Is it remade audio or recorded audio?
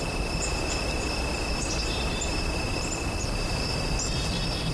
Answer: recorded